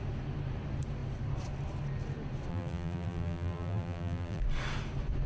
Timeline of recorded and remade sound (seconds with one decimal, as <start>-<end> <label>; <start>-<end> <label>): 0.0-2.5 recorded; 2.5-4.4 remade; 4.4-5.3 recorded